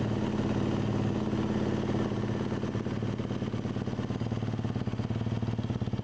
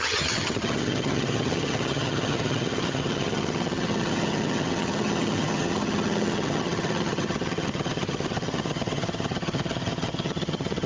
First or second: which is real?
first